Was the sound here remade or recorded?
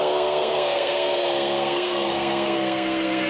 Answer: remade